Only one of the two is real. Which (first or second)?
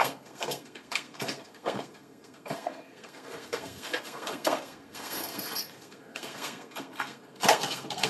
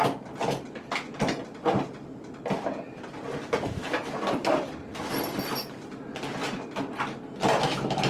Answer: second